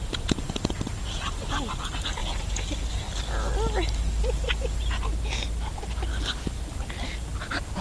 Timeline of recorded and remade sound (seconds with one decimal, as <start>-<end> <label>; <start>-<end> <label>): 0.0-2.2 recorded; 2.2-2.8 remade; 2.8-5.1 recorded; 5.1-5.8 remade; 5.8-7.8 recorded